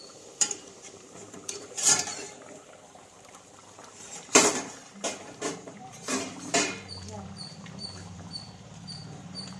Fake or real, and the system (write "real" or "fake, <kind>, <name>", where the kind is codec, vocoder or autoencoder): fake, vocoder, BigVGAN v2